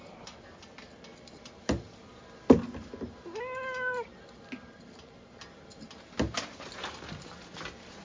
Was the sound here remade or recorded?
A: recorded